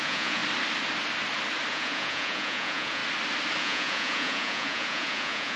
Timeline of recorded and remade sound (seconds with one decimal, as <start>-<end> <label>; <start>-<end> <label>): 0.0-0.4 remade; 0.4-1.7 recorded; 1.7-3.0 remade; 3.0-3.6 recorded; 3.6-5.6 remade